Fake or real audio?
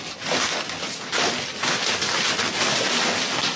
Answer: real